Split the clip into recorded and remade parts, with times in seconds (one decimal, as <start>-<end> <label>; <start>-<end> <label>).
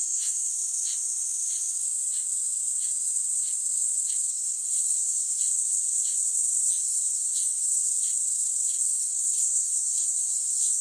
0.0-0.5 remade; 0.5-4.3 recorded; 4.3-5.4 remade; 5.4-6.7 recorded; 6.7-7.7 remade; 7.7-8.8 recorded; 8.8-10.8 remade